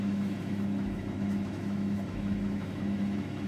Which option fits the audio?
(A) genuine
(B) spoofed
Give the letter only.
B